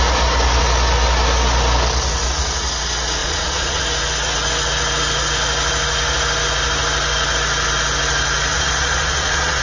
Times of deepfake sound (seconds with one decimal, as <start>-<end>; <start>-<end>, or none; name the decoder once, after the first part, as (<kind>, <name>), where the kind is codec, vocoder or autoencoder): 3.2-3.8 (vocoder, Vocos); 8.5-9.6